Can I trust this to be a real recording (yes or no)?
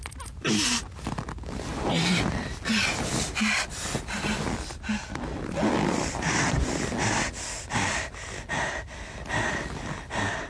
yes